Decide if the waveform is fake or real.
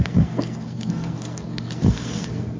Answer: fake